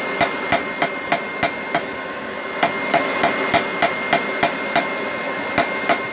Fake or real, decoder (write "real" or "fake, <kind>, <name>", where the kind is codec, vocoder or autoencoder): real